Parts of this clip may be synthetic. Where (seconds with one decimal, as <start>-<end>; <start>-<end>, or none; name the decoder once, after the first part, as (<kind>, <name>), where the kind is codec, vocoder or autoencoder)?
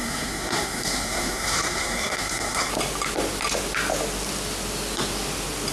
0.0-2.7 (codec, SNAC)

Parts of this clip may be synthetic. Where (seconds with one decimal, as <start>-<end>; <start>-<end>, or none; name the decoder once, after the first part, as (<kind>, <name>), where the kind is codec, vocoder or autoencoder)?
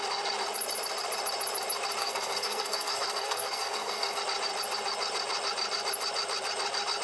2.0-4.2 (codec, SNAC)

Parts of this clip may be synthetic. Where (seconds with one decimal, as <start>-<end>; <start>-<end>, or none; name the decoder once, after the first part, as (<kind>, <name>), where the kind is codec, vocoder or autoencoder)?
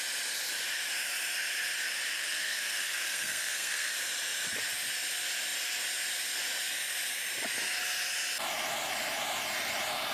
2.1-3.9 (codec, SNAC)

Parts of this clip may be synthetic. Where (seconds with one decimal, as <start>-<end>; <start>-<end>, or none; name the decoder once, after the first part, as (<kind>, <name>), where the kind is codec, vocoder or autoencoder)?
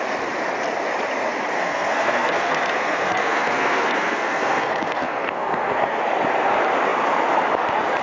1.6-6.0 (codec, SNAC)